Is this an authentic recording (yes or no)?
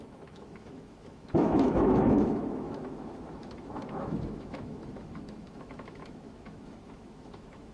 no